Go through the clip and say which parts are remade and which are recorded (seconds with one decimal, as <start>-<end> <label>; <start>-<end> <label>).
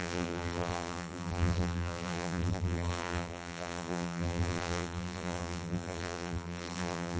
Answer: 0.0-7.2 remade